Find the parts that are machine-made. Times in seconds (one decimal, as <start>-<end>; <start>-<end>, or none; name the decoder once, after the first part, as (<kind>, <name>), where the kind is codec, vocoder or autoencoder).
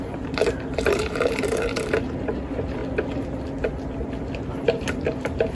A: 0.0-2.8 (vocoder, BigVGAN v2); 4.6-5.5